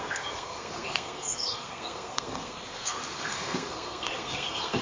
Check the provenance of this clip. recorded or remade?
remade